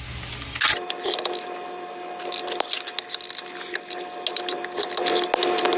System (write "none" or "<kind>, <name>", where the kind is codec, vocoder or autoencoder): none